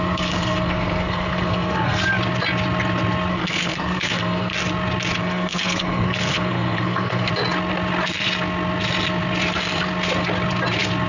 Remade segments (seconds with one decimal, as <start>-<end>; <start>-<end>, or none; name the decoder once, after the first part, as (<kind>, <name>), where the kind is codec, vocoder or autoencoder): 0.0-2.0 (codec, SNAC); 3.3-4.5; 5.2-7.3